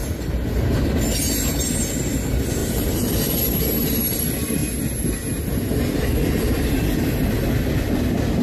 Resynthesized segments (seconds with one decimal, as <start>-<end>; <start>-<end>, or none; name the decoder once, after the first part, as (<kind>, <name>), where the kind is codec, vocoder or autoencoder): 0.0-0.9 (vocoder, BigVGAN v2); 2.6-3.3